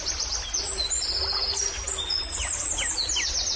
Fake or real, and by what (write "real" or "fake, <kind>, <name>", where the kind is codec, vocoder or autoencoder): real